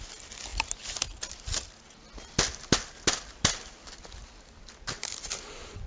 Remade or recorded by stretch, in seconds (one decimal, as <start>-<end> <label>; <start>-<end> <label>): 0.0-5.9 recorded